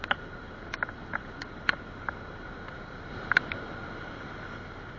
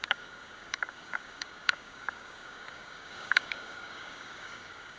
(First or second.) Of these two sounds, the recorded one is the first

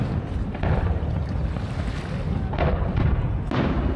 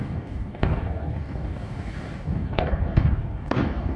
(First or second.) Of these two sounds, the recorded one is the first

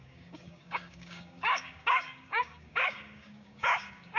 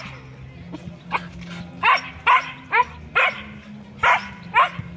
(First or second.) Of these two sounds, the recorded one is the second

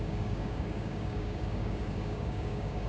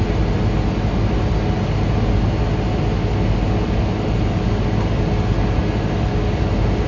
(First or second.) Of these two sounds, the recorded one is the second